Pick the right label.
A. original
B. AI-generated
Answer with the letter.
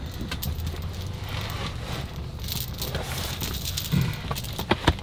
A